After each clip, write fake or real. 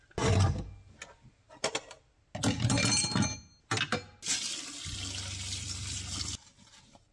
real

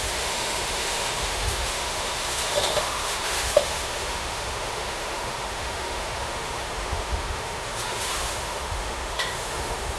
fake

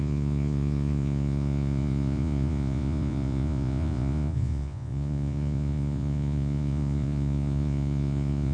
fake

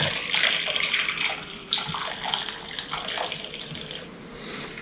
real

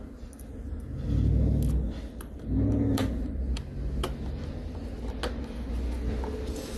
real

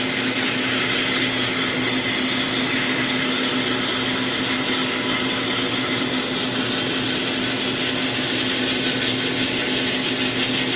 real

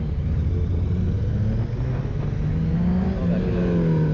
real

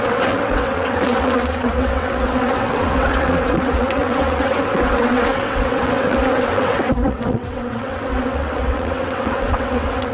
fake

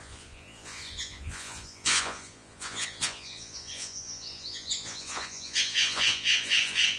fake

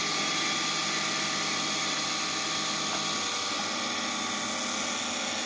real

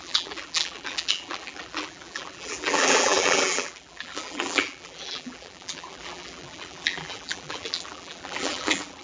fake